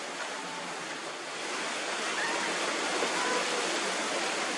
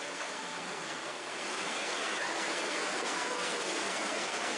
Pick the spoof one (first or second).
second